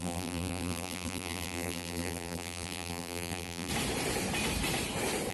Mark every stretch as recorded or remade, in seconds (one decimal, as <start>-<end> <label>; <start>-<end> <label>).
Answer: 0.0-3.7 remade; 3.7-5.3 recorded